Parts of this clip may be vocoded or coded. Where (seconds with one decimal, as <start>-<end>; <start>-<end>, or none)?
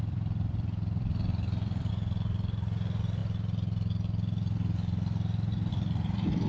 0.0-1.9